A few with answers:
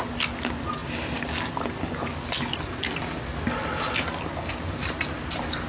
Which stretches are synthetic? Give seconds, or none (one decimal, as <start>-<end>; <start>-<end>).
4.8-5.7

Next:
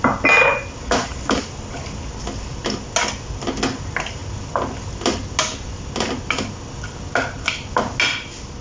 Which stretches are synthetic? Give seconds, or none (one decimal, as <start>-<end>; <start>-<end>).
none

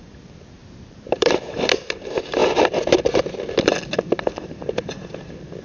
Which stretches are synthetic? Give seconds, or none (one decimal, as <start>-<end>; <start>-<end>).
0.6-1.7

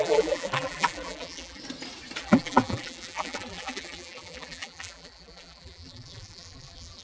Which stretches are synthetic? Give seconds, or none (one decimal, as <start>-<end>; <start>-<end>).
0.0-1.6; 2.2-7.0

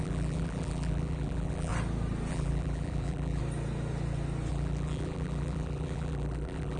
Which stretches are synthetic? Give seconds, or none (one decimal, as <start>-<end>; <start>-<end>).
0.0-1.7; 2.3-3.4; 4.5-6.8

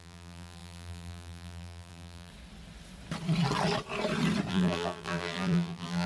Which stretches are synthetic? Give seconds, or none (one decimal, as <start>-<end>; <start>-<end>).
0.0-2.3; 4.5-6.1

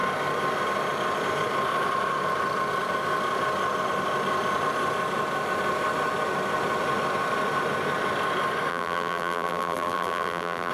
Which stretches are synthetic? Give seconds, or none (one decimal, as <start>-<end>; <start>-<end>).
8.7-10.7